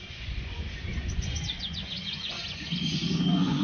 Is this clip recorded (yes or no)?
no